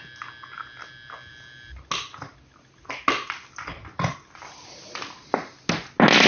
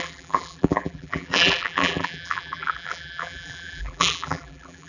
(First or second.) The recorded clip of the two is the first